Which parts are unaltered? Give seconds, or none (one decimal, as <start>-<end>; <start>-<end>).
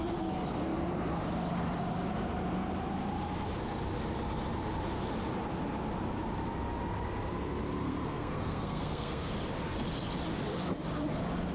0.0-7.8; 9.3-11.5